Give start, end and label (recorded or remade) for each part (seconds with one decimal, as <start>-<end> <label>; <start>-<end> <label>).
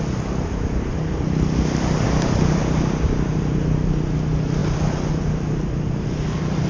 0.0-6.7 recorded